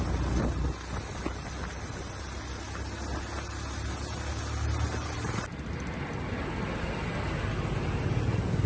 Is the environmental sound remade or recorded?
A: recorded